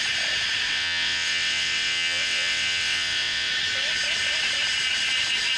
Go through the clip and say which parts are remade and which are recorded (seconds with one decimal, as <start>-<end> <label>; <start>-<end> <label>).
0.0-0.7 recorded; 0.7-3.5 remade; 3.5-5.6 recorded